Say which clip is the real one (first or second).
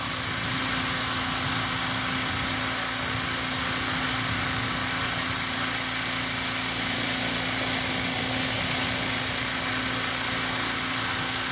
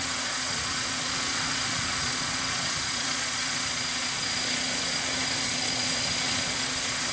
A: first